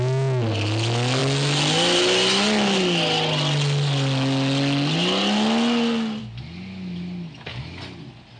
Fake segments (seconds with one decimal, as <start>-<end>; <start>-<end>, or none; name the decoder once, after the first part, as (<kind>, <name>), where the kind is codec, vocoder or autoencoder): none